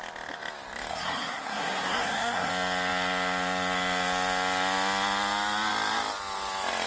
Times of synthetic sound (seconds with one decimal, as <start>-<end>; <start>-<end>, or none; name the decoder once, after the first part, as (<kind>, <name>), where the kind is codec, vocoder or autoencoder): 0.9-2.5 (codec, SNAC)